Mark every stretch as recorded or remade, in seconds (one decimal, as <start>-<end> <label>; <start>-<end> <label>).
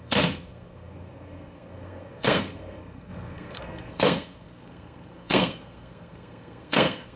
0.0-7.2 remade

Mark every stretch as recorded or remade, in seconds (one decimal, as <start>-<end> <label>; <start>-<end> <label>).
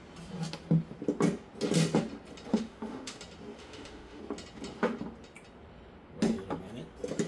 0.0-2.5 recorded; 2.5-3.2 remade; 3.2-3.6 recorded; 3.6-4.2 remade; 4.2-7.3 recorded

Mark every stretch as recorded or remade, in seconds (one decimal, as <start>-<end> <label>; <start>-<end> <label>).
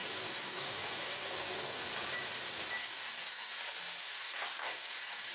0.0-1.9 remade; 1.9-2.8 recorded; 2.8-3.6 remade; 3.6-4.0 recorded; 4.0-5.3 remade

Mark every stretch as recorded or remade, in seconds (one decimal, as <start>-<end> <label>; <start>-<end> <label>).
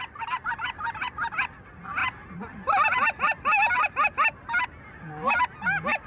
0.0-6.1 recorded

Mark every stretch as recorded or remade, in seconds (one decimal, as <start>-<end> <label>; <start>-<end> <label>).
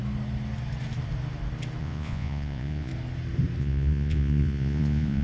0.0-1.8 recorded; 1.8-2.9 remade; 2.9-3.6 recorded; 3.6-5.2 remade